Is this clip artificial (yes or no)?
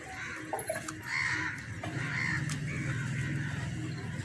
no